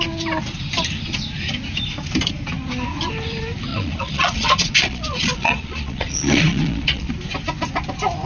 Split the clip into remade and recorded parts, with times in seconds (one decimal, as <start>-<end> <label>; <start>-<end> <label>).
0.0-3.7 recorded; 3.7-7.1 remade; 7.1-8.3 recorded